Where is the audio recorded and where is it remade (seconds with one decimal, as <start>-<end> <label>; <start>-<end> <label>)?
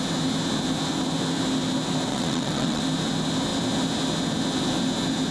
0.0-2.1 recorded; 2.1-2.8 remade; 2.8-5.3 recorded